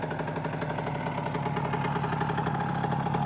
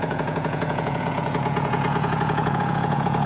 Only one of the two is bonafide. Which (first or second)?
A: first